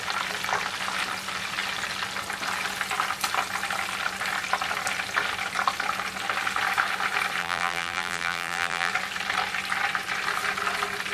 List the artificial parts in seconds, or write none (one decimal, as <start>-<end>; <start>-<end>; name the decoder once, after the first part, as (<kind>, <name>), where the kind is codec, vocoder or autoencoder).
7.4-8.9 (vocoder, BigVGAN v2)